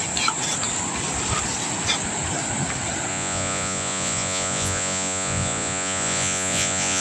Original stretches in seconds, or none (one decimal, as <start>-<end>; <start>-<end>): 0.0-3.1